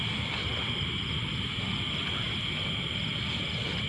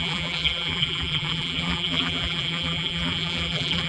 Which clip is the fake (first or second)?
second